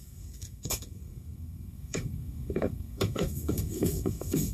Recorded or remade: remade